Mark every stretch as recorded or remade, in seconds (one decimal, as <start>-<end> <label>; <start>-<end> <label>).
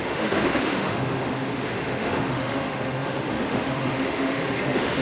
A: 0.0-5.0 remade